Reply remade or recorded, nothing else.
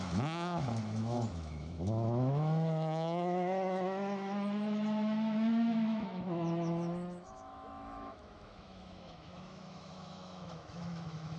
remade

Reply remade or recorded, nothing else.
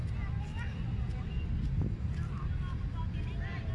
recorded